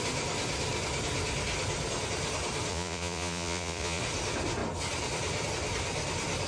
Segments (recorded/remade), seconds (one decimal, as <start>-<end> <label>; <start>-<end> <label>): 0.0-2.7 recorded; 2.7-4.0 remade; 4.0-6.5 recorded

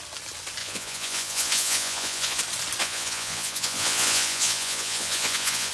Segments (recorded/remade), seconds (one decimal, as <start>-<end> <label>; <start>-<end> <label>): 0.0-0.6 recorded; 0.6-2.4 remade; 2.4-2.8 recorded; 2.8-5.7 remade

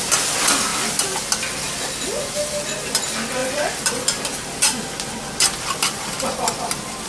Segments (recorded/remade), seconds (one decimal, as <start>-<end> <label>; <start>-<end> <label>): 0.0-3.4 recorded; 3.4-7.1 remade